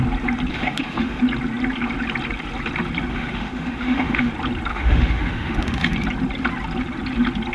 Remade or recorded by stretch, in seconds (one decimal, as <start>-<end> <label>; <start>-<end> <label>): 0.0-0.5 recorded; 0.5-1.2 remade; 1.2-3.1 recorded; 3.1-4.3 remade; 4.3-4.7 recorded; 4.7-5.9 remade; 5.9-7.5 recorded